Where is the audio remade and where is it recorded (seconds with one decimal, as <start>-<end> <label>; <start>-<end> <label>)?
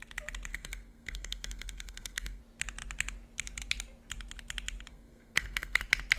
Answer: 0.0-0.5 recorded; 0.5-2.4 remade; 2.4-4.9 recorded; 4.9-5.8 remade; 5.8-6.2 recorded